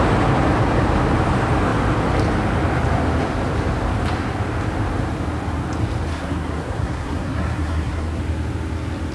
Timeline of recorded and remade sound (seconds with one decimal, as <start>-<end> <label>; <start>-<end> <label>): 0.0-6.1 recorded; 6.1-8.2 remade; 8.2-9.1 recorded